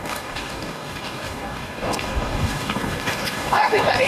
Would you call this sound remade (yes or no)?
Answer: yes